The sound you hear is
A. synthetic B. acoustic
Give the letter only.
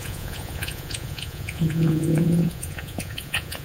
A